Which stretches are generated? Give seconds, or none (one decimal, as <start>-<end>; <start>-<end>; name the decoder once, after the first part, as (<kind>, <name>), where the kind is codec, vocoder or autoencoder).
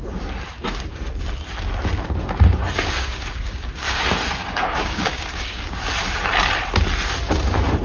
3.0-4.0 (codec, DAC); 4.4-5.8